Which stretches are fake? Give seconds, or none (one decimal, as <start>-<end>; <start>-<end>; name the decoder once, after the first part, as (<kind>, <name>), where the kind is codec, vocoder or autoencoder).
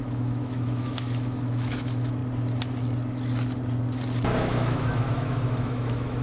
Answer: 0.0-2.2 (autoencoder, DAC-VAE); 4.4-6.2